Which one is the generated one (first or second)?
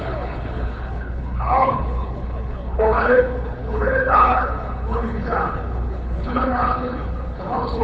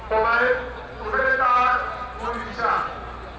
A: first